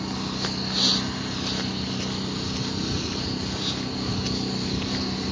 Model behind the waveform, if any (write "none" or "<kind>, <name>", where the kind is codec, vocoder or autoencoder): none